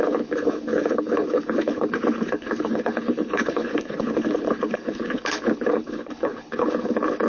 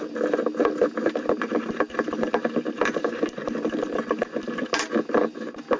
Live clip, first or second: second